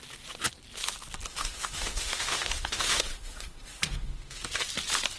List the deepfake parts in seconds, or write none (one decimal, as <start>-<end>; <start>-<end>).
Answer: 1.3-4.4